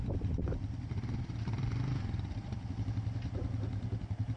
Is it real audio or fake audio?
fake